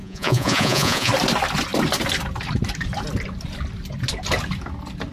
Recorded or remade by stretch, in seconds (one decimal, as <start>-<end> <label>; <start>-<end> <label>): 0.0-1.1 remade; 1.1-5.1 recorded

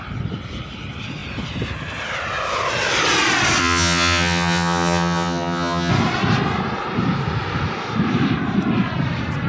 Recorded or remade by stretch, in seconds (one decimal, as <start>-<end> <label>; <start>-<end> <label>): 0.0-3.6 recorded; 3.6-5.9 remade; 5.9-9.5 recorded

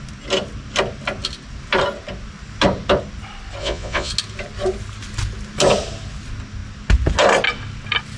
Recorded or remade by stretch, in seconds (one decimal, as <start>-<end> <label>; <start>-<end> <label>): 0.0-3.6 recorded; 3.6-4.1 remade; 4.1-8.2 recorded

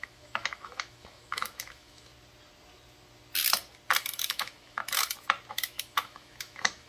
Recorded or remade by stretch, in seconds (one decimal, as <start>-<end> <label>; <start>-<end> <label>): 0.0-2.1 remade; 2.1-4.2 recorded; 4.2-4.8 remade; 4.8-5.5 recorded; 5.5-6.9 remade

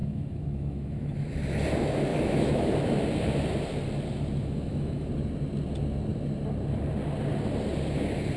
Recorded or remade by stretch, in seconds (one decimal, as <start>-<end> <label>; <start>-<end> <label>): 0.0-1.3 remade; 1.3-2.1 recorded; 2.1-2.7 remade; 2.7-4.4 recorded; 4.4-5.1 remade; 5.1-8.4 recorded